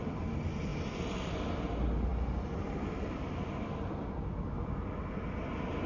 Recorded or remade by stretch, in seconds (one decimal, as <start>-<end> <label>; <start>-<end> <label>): 0.0-5.9 recorded